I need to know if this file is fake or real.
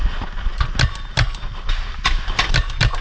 real